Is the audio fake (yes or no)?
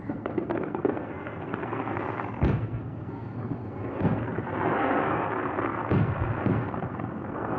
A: yes